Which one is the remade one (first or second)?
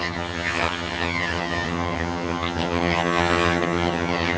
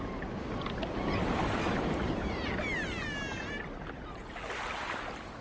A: first